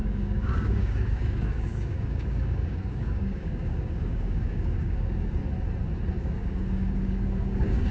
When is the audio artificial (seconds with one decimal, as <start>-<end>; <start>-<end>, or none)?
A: 0.0-5.4; 6.2-7.9

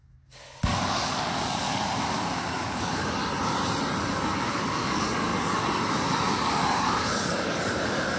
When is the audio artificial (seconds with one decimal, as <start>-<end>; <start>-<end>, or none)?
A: 0.0-3.2; 4.1-5.3; 5.9-8.2

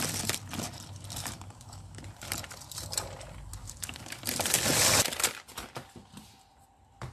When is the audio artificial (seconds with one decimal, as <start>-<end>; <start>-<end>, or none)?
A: 1.2-2.0; 3.6-4.2

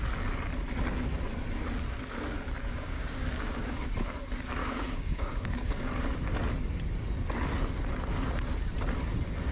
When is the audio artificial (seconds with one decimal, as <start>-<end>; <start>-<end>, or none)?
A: 2.6-3.9; 4.6-5.9